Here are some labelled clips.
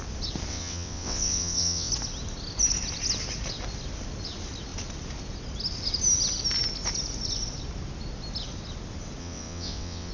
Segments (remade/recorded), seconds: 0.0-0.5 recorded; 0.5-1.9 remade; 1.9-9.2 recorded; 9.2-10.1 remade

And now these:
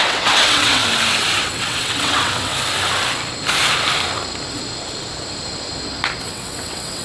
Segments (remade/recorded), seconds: 0.0-0.8 remade; 0.8-1.4 recorded; 1.4-2.5 remade; 2.5-6.2 recorded; 6.2-7.0 remade

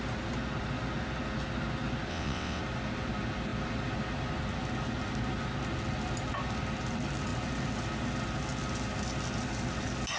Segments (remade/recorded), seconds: 0.0-2.1 recorded; 2.1-2.6 remade; 2.6-10.2 recorded

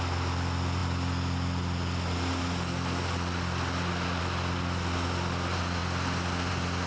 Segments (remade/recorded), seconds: 0.0-6.9 recorded

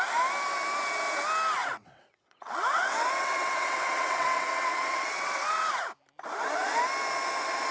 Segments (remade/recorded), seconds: 0.0-1.6 recorded; 1.6-5.7 remade; 5.7-7.7 recorded